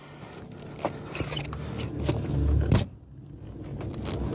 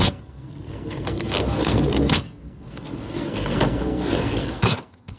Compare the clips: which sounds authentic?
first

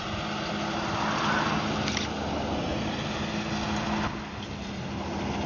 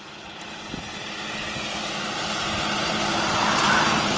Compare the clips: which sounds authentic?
first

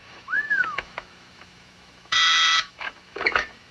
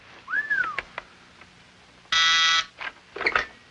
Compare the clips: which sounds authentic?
second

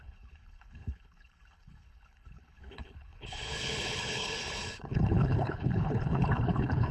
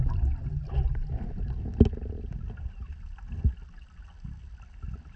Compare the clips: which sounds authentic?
second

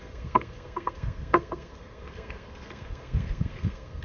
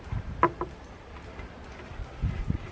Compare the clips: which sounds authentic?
second